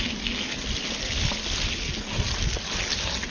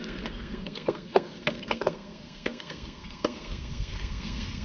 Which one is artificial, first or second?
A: second